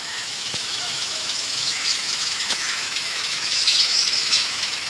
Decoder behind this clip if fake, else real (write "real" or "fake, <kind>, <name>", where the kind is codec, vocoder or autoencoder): fake, autoencoder, DAC-VAE